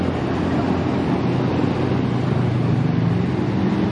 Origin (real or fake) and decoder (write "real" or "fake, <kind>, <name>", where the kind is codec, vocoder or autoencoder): real